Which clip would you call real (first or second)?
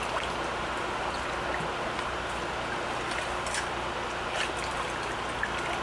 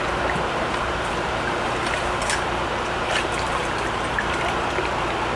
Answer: first